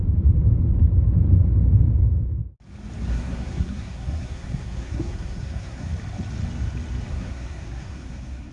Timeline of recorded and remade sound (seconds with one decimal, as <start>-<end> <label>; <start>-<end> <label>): 0.0-3.1 recorded; 3.1-5.9 remade; 5.9-7.1 recorded; 7.1-8.5 remade

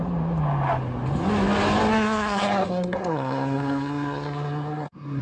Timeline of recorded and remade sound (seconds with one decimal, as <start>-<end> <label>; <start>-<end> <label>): 0.0-1.9 recorded; 1.9-5.2 remade

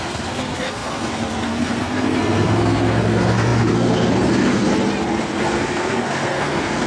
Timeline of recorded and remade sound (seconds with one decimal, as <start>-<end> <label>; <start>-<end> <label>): 0.0-4.7 remade; 4.7-5.4 recorded; 5.4-6.9 remade